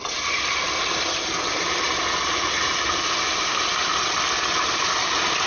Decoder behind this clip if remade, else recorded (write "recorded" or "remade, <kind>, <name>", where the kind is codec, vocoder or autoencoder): recorded